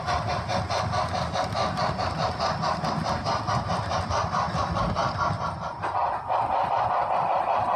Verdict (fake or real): real